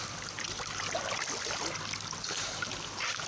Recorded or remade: recorded